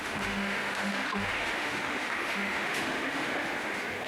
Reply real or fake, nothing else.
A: fake